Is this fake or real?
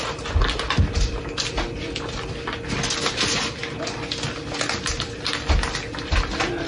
real